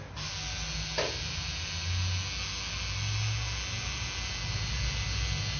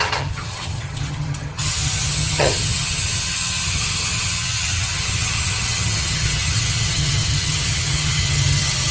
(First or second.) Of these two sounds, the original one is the first